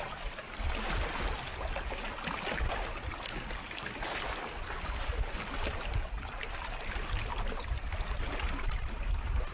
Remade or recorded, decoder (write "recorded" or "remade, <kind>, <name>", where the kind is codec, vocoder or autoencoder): recorded